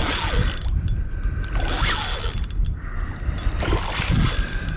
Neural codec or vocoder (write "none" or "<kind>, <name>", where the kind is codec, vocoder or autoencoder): none